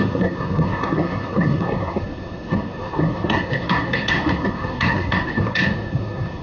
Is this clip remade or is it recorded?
remade